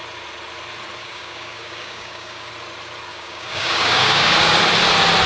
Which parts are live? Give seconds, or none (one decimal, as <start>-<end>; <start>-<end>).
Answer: 0.0-1.0; 2.5-3.1; 4.6-5.3